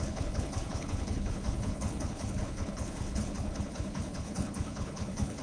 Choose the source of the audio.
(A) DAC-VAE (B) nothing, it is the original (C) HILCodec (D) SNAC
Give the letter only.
C